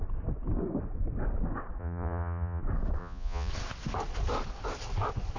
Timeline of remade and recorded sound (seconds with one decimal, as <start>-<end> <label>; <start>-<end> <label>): 0.0-1.8 recorded; 1.8-2.6 remade; 2.6-3.0 recorded; 3.0-3.5 remade; 3.5-5.4 recorded